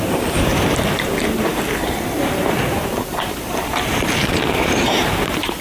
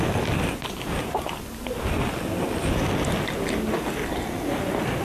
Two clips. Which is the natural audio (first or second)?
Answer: second